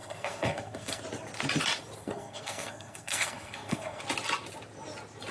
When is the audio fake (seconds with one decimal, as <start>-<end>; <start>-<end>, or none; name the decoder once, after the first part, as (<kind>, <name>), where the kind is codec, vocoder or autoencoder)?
0.0-1.0 (codec, SNAC); 2.0-4.0